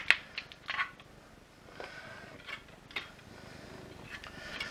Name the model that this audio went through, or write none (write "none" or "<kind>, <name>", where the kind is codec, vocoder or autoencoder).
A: none